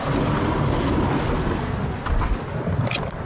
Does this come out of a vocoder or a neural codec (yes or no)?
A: no